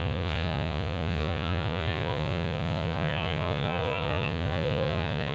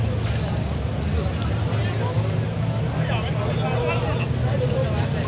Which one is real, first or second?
second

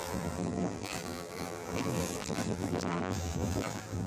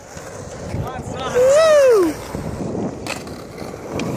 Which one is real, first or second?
second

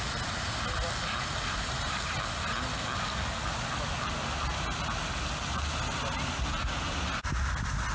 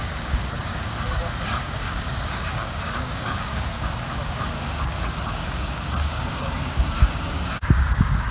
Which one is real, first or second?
first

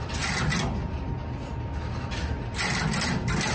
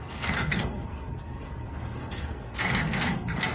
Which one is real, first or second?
first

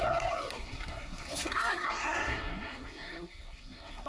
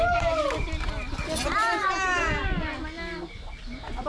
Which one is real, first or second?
second